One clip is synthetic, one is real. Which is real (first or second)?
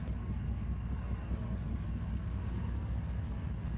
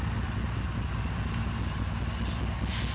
second